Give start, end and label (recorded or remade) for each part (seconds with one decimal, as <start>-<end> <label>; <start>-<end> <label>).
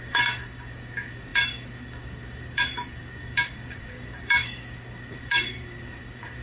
0.0-6.4 remade